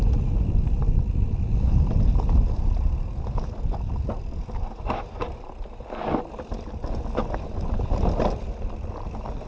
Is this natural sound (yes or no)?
yes